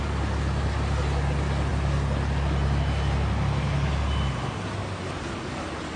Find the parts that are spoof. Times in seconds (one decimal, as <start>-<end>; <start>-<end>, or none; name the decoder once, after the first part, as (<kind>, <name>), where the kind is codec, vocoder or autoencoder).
none